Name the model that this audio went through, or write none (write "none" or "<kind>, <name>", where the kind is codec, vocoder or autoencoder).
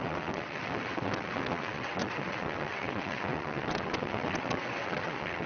vocoder, WaveNeXt